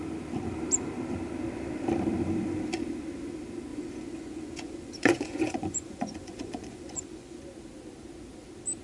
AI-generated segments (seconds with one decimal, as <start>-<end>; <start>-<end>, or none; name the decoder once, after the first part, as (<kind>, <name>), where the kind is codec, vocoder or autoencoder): 3.7-7.4 (vocoder, Vocos)